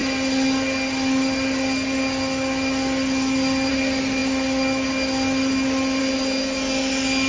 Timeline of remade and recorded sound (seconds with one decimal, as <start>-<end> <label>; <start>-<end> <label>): 0.0-7.3 recorded